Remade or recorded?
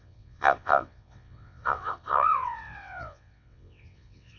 remade